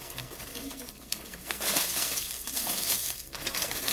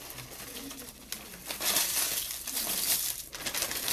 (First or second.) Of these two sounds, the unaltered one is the second